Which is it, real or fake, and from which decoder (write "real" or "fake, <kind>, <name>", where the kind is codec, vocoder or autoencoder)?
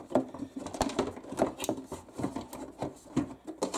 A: real